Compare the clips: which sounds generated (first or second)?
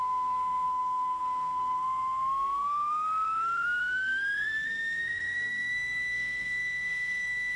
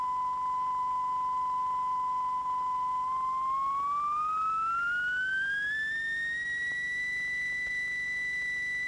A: first